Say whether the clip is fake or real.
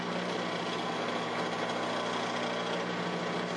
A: real